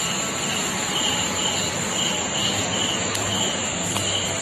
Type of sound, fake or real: real